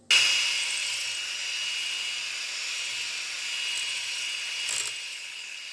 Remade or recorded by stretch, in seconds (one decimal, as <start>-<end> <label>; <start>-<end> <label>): 0.0-5.1 recorded; 5.1-5.7 remade